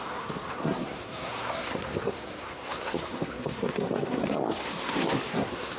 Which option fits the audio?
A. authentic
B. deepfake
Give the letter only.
B